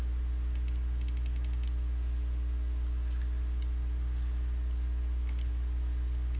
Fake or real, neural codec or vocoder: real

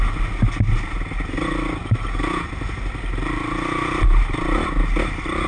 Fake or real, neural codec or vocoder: real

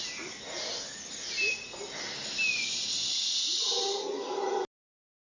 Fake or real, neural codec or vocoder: real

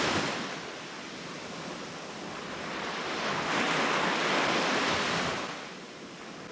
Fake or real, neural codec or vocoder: real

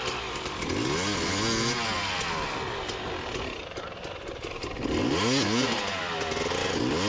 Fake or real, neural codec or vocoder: real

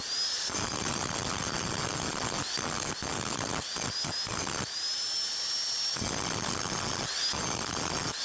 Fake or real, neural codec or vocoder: real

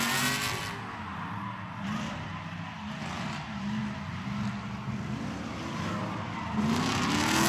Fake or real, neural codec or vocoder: real